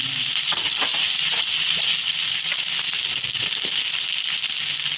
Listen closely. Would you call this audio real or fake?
real